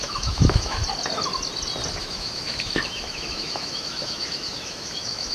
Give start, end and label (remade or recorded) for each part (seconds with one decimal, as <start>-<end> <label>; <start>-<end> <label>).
0.0-0.8 remade; 0.8-2.0 recorded; 2.0-5.3 remade